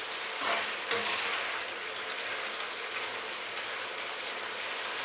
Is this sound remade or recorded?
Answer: recorded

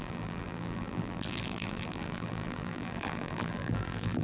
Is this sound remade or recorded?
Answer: remade